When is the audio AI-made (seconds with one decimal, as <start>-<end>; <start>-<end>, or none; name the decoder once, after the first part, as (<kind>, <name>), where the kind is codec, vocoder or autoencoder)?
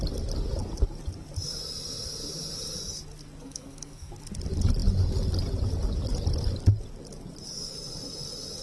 3.4-4.1 (codec, SNAC)